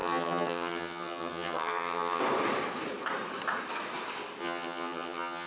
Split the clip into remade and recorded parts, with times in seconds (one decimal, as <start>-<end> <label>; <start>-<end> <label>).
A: 0.0-2.2 remade; 2.2-4.4 recorded; 4.4-5.5 remade